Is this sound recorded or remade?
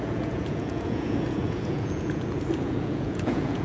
remade